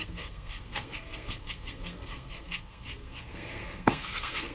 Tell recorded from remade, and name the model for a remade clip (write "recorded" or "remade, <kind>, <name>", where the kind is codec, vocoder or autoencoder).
remade, codec, SNAC